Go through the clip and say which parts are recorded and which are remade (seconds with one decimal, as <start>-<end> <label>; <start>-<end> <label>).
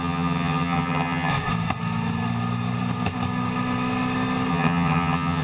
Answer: 0.0-1.3 remade; 1.3-4.5 recorded; 4.5-5.4 remade